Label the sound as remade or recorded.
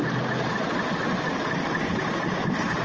recorded